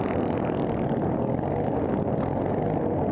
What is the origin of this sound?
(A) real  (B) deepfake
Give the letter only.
A